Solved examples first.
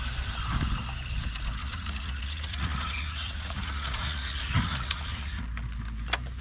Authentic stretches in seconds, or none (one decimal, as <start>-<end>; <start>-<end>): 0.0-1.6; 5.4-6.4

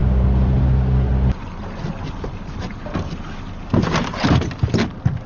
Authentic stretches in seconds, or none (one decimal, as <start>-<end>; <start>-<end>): 0.0-5.3

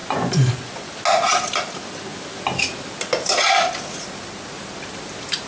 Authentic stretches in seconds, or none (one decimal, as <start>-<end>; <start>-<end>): 0.9-5.5